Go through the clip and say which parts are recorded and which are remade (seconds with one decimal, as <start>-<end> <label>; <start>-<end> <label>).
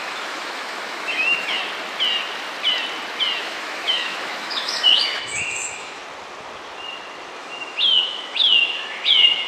0.0-1.6 remade; 1.6-3.4 recorded; 3.4-6.0 remade; 6.0-7.4 recorded; 7.4-9.5 remade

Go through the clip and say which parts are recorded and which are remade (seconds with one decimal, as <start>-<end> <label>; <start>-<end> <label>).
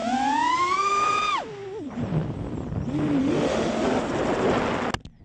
0.0-3.2 recorded; 3.2-3.7 remade; 3.7-5.2 recorded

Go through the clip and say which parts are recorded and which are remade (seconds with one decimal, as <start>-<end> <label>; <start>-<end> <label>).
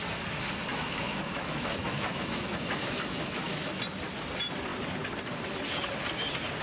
0.0-0.7 recorded; 0.7-3.7 remade; 3.7-6.6 recorded